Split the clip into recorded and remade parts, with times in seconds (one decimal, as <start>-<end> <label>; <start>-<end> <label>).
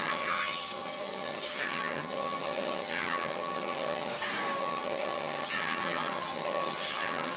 0.0-4.1 remade; 4.1-4.6 recorded; 4.6-7.4 remade